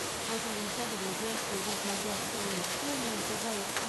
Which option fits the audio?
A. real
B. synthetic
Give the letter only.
B